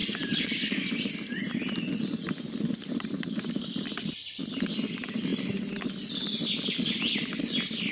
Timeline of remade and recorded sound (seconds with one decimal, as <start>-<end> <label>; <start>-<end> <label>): 0.0-3.9 remade; 3.9-5.3 recorded; 5.3-7.9 remade